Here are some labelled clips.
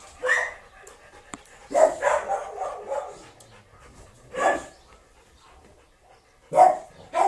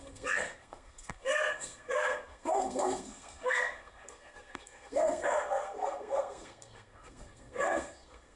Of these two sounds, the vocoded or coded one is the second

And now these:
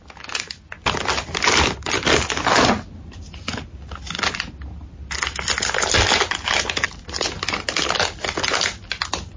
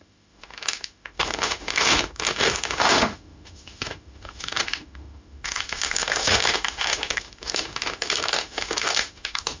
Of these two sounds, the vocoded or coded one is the second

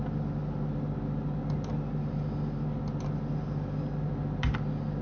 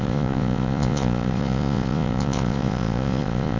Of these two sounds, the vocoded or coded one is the second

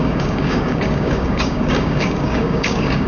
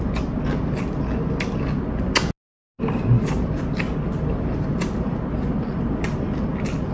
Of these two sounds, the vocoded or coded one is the first